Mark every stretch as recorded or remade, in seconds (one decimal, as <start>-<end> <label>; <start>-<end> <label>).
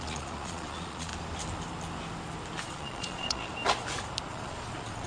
0.0-1.1 remade; 1.1-2.6 recorded; 2.6-3.5 remade; 3.5-4.3 recorded; 4.3-5.1 remade